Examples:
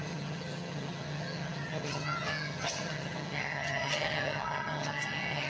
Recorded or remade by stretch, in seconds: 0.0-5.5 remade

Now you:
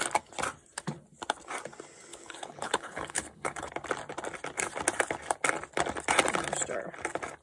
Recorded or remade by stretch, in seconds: 0.0-2.1 recorded; 2.1-3.7 remade; 3.7-7.4 recorded